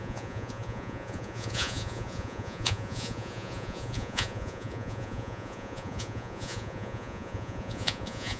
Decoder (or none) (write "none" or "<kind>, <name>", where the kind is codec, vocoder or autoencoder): vocoder, Vocos